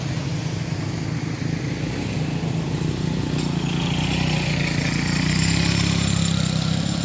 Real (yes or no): yes